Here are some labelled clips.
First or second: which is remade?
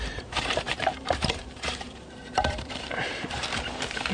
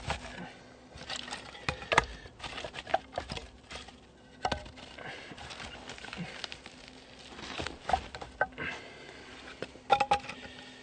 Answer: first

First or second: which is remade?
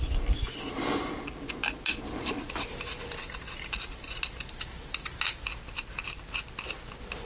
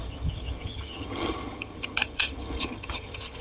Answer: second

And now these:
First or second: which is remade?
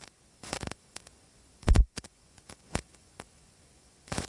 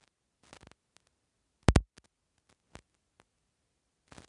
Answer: first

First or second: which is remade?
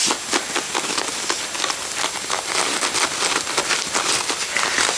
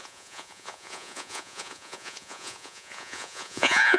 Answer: second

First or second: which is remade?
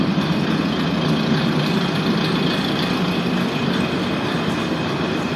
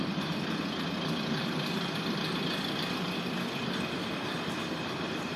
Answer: second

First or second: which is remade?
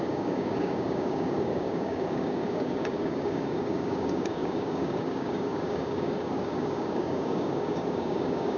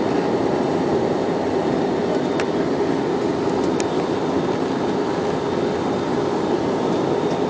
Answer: first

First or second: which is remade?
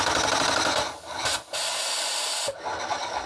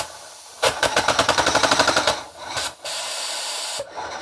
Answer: second